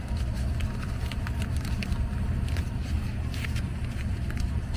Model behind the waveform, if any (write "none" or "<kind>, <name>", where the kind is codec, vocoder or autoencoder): vocoder, BigVGAN v2